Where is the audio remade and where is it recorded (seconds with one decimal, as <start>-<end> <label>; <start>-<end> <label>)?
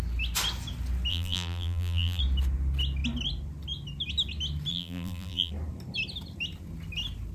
0.0-1.1 recorded; 1.1-2.2 remade; 2.2-4.7 recorded; 4.7-5.5 remade; 5.5-7.3 recorded